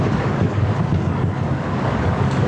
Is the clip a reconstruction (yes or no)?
yes